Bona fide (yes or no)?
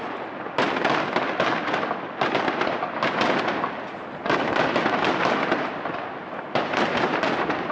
yes